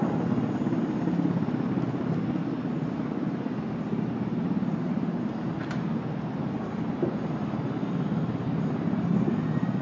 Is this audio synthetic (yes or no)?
no